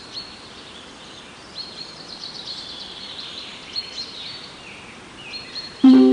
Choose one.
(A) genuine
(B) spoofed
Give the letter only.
B